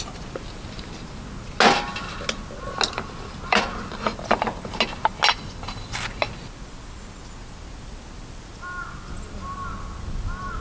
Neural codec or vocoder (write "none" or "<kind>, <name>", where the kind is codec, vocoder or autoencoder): none